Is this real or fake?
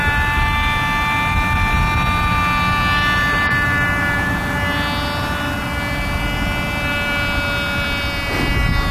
real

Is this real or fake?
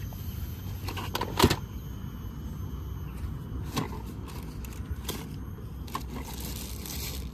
real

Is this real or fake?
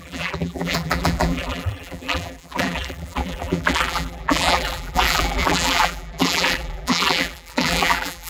fake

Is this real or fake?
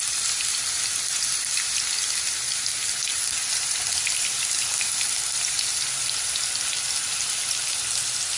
real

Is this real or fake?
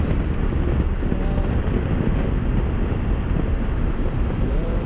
real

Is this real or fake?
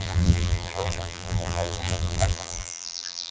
fake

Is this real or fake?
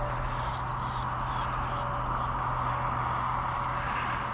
real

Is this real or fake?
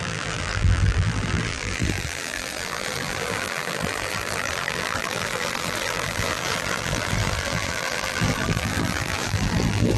fake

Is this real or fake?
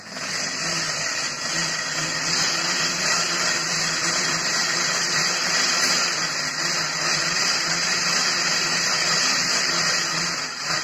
fake